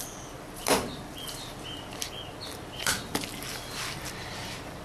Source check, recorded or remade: remade